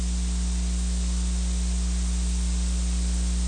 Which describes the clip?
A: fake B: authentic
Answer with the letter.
B